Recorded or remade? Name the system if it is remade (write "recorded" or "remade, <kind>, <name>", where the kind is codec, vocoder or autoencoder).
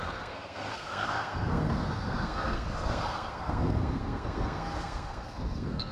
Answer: remade, codec, SNAC